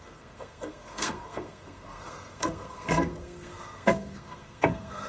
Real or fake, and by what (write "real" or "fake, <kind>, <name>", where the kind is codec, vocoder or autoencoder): fake, codec, SNAC